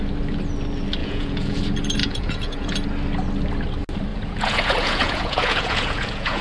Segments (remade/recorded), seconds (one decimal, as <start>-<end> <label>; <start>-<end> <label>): 0.0-1.0 recorded; 1.0-1.6 remade; 1.6-2.0 recorded; 2.0-2.7 remade; 2.7-4.1 recorded; 4.1-6.4 remade